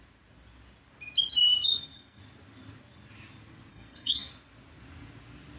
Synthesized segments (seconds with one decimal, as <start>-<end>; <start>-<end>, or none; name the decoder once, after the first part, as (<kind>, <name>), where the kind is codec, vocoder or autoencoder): 1.4-2.2 (codec, SNAC); 3.7-4.3